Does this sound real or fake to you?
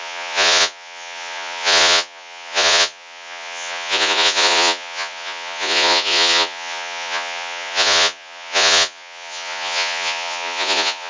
fake